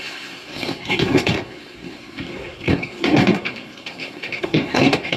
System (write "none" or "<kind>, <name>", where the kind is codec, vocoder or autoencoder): codec, SNAC